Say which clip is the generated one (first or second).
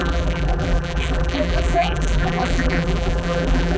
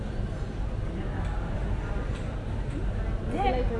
first